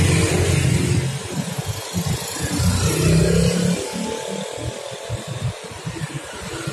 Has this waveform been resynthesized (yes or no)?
no